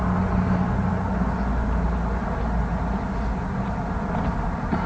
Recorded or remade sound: recorded